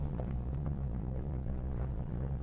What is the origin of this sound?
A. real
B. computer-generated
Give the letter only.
B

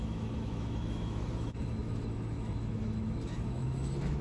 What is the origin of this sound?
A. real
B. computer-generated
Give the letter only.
B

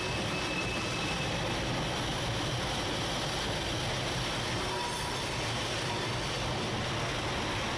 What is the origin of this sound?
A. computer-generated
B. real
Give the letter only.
B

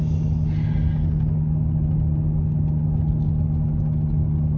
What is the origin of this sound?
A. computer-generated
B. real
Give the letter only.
B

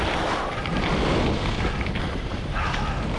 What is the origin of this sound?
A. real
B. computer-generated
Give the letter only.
A